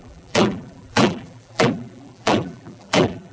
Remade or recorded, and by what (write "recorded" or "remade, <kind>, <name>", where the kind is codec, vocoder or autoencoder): remade, vocoder, BigVGAN v2